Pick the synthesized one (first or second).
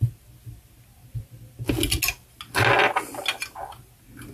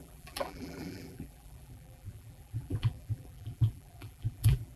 second